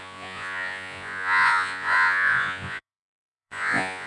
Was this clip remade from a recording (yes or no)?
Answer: yes